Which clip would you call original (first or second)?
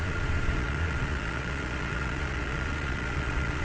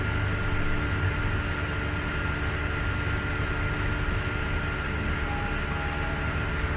second